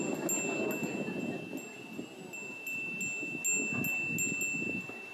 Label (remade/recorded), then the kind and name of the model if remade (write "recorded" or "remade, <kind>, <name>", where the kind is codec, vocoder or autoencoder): recorded